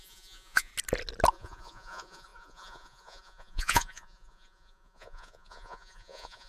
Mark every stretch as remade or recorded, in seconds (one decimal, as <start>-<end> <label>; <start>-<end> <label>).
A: 0.0-0.7 remade; 0.7-1.3 recorded; 1.3-6.5 remade